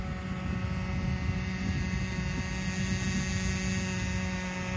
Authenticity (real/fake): real